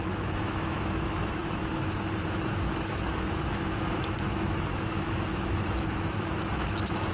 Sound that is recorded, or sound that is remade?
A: remade